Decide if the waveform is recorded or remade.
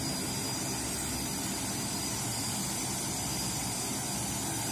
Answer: recorded